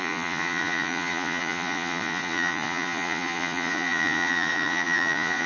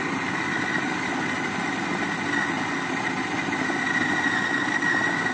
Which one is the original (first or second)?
second